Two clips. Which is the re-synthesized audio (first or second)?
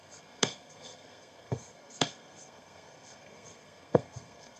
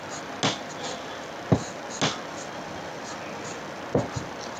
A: first